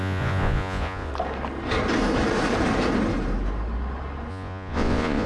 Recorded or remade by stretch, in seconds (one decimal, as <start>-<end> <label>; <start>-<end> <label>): 0.0-1.1 remade; 1.1-4.3 recorded; 4.3-5.3 remade